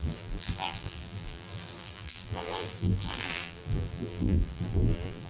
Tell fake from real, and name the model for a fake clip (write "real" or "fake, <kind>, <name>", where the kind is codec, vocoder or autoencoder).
fake, vocoder, BigVGAN v2